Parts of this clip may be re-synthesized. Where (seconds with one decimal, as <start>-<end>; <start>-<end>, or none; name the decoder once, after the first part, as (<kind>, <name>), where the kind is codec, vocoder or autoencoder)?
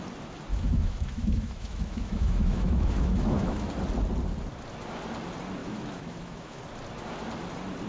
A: 0.5-3.7 (autoencoder, DAC-VAE); 5.6-6.6